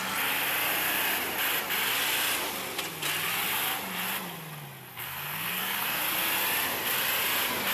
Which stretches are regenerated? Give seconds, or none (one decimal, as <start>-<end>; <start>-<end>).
4.9-6.0